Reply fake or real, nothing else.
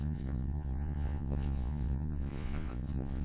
fake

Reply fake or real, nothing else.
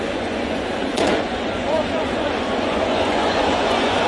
fake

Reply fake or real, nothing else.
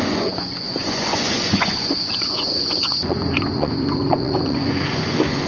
fake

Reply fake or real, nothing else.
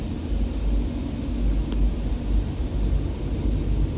real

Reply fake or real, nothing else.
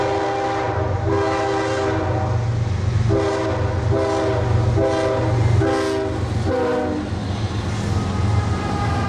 real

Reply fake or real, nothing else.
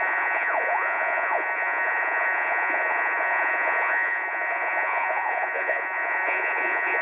fake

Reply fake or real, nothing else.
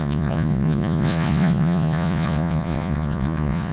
fake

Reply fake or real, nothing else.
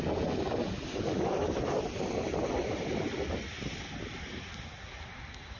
real